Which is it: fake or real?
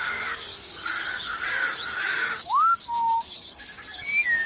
fake